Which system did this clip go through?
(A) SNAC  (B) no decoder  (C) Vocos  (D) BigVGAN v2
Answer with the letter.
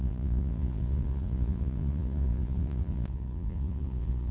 C